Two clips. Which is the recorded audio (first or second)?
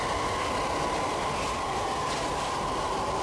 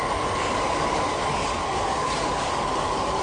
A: first